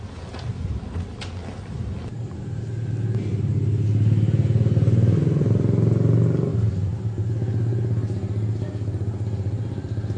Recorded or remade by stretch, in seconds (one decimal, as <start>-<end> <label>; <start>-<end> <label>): 0.0-10.2 recorded